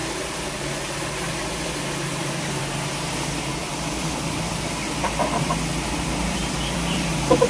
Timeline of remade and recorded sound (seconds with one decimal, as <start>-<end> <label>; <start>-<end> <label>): 0.0-3.6 recorded; 3.6-5.5 remade; 5.5-6.4 recorded; 6.4-7.1 remade; 7.1-7.5 recorded